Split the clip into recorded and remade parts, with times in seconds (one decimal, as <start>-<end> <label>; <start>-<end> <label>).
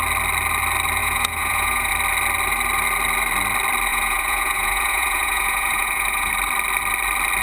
0.0-1.0 recorded; 1.0-1.9 remade; 1.9-3.9 recorded; 3.9-6.3 remade; 6.3-7.4 recorded